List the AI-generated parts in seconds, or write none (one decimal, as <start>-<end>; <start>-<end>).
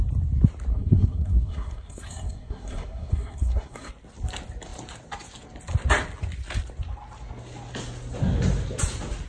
0.7-3.9